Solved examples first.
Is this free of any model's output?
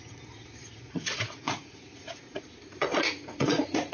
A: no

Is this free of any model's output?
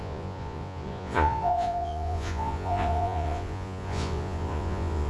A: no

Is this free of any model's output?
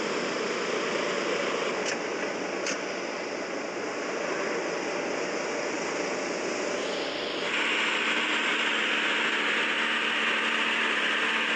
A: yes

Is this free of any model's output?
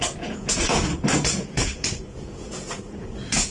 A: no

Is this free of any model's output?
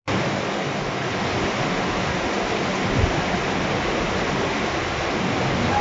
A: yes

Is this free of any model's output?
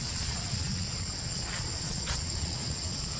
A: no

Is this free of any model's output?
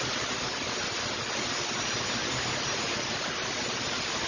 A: yes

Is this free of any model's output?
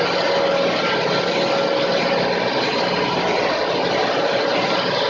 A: yes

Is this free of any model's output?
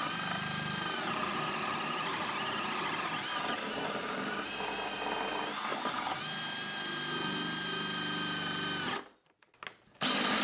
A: yes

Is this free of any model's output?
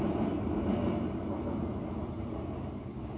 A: yes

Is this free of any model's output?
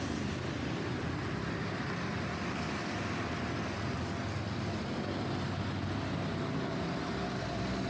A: yes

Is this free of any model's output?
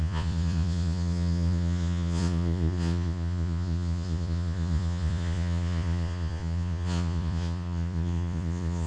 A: no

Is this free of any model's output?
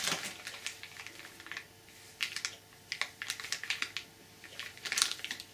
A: yes